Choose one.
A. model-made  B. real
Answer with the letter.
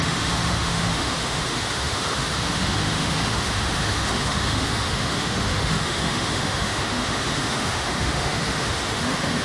A